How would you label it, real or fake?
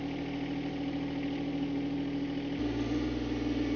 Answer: real